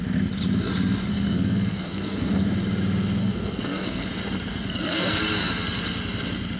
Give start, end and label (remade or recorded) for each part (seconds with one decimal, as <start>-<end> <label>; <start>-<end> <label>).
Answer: 0.0-1.1 recorded; 1.1-2.3 remade; 2.3-3.2 recorded; 3.2-4.0 remade; 4.0-4.5 recorded; 4.5-5.2 remade; 5.2-6.6 recorded